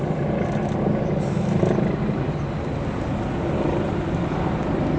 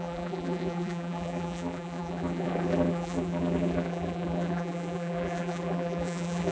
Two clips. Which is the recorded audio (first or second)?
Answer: first